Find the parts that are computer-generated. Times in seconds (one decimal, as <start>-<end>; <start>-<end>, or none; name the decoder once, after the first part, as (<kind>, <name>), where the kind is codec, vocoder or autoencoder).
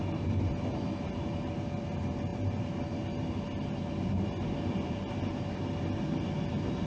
none